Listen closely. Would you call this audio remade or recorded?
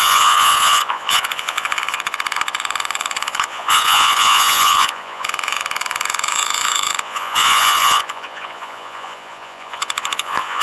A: remade